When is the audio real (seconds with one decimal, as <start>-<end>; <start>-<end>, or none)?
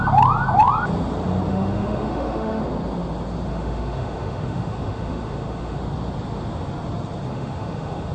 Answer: 0.0-1.5; 2.6-3.5; 5.8-7.3